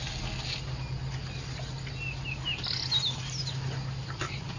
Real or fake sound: real